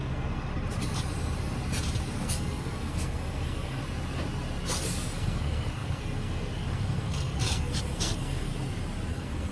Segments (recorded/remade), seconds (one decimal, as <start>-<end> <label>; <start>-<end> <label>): 0.0-0.5 remade; 0.5-2.2 recorded; 2.2-3.8 remade; 3.8-4.7 recorded; 4.7-8.5 remade; 8.5-9.1 recorded; 9.1-9.5 remade